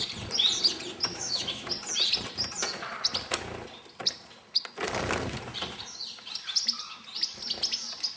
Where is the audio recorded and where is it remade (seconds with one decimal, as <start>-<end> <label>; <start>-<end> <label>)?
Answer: 0.0-1.1 recorded; 1.1-1.7 remade; 1.7-8.2 recorded